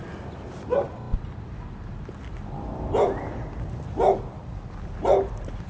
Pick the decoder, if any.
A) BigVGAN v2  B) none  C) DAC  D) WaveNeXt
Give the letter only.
B